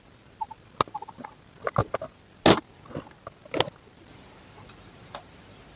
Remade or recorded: recorded